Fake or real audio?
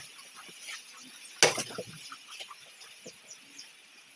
real